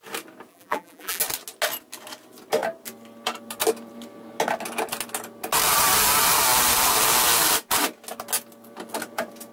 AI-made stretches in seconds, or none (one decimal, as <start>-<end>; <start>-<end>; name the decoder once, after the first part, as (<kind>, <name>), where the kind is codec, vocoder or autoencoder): 0.5-1.2 (vocoder, BigVGAN v2)